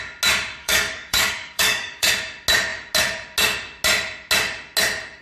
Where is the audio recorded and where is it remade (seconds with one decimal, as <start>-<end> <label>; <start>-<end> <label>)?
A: 0.0-0.6 recorded; 0.6-2.1 remade; 2.1-5.2 recorded